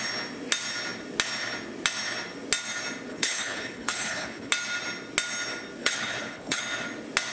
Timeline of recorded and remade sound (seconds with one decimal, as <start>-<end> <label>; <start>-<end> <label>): 0.0-3.1 recorded; 3.1-4.5 remade; 4.5-5.8 recorded; 5.8-6.6 remade; 6.6-7.3 recorded